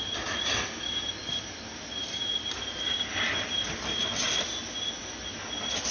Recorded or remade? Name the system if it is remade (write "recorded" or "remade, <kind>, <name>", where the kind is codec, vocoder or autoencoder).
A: recorded